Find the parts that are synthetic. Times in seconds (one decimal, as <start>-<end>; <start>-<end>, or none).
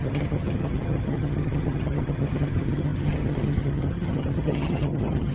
0.0-5.3